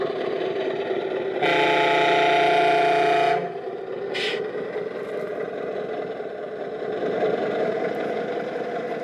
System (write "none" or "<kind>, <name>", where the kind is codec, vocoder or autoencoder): none